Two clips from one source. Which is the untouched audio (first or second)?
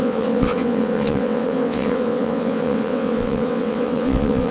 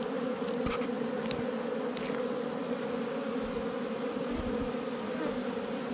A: second